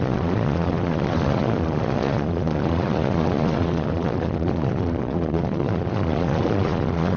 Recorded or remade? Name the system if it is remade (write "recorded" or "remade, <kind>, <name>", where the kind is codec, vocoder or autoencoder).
remade, vocoder, Vocos